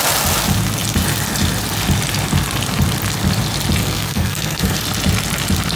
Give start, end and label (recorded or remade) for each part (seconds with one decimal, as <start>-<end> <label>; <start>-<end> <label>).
0.0-3.8 recorded; 3.8-4.8 remade; 4.8-5.8 recorded